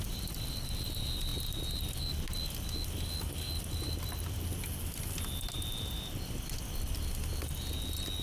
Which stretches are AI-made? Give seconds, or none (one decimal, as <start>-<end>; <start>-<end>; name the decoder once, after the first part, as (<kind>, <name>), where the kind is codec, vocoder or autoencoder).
none